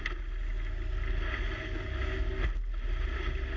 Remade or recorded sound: recorded